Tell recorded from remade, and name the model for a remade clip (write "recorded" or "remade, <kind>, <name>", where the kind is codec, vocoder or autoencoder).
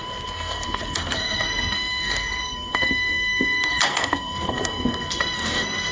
remade, codec, SNAC